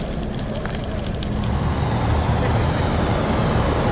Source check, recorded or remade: recorded